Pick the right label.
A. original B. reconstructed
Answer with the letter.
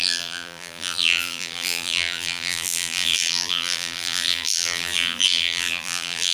B